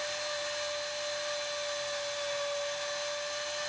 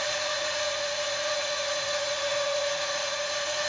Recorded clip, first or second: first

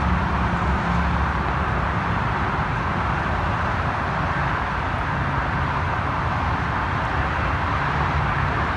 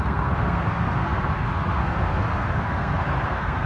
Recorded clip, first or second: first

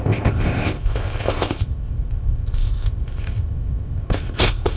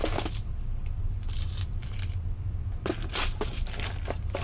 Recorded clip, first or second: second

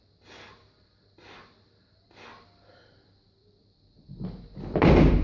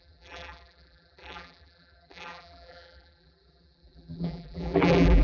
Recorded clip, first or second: first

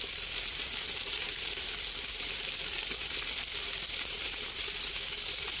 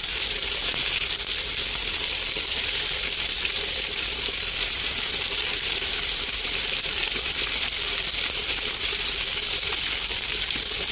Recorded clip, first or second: first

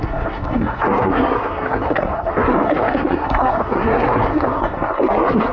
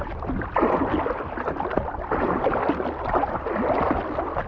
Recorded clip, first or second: second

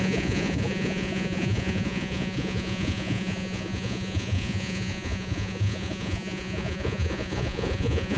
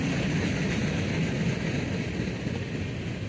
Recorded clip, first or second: second